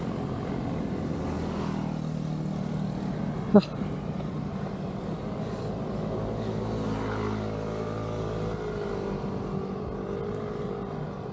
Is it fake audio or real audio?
real